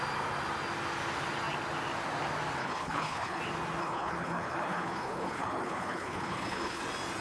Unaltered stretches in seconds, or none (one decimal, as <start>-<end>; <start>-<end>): 0.0-2.6; 3.4-3.8; 6.8-7.2